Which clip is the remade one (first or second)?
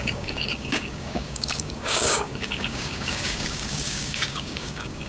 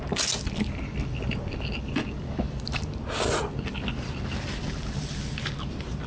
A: first